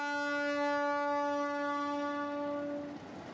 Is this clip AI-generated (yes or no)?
no